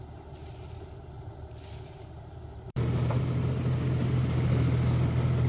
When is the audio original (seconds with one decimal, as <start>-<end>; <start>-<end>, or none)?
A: 0.0-0.4; 3.2-5.5